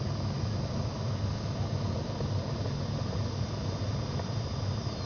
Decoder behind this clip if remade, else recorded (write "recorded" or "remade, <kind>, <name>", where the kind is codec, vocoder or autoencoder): recorded